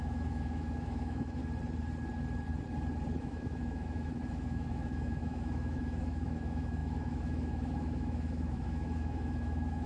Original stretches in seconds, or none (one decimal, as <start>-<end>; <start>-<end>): 1.4-3.2